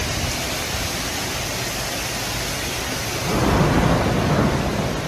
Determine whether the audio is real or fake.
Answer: real